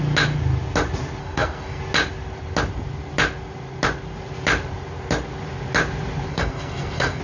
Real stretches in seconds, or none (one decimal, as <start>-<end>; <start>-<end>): 0.0-1.2; 1.8-6.3